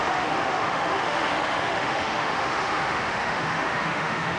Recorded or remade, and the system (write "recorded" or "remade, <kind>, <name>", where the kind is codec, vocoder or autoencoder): remade, autoencoder, DAC-VAE